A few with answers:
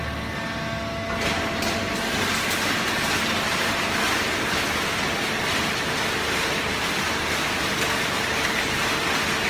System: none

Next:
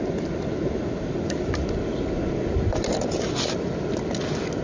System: none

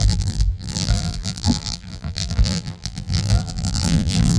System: vocoder, BigVGAN v2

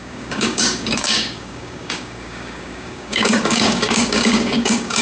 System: codec, DAC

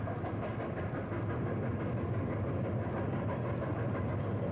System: none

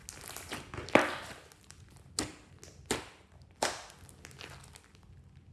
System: none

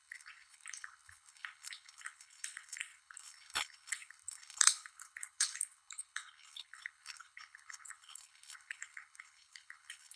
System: codec, HILCodec